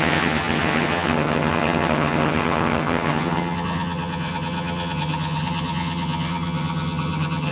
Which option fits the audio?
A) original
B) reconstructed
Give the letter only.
B